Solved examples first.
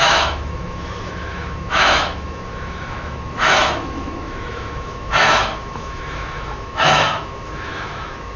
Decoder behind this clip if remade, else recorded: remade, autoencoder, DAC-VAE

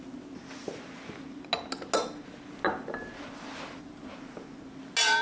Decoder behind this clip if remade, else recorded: recorded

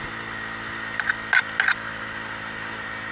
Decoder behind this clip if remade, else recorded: recorded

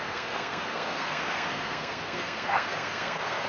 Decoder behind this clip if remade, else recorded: remade, codec, SNAC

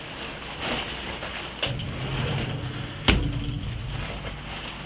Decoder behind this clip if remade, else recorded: recorded